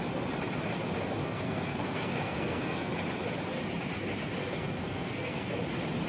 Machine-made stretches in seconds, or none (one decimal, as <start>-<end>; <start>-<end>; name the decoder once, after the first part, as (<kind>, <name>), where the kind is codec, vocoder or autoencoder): 1.2-2.9 (codec, SNAC); 4.4-5.5